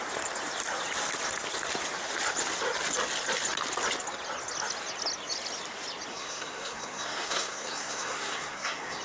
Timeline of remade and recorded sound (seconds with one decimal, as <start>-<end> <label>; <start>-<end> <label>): 0.0-6.1 recorded; 6.1-9.0 remade